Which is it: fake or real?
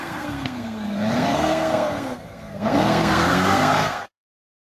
fake